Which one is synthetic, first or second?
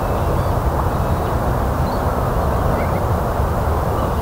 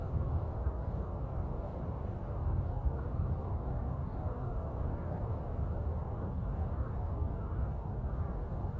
second